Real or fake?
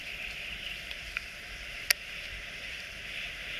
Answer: fake